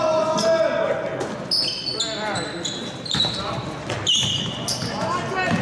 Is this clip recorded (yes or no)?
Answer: yes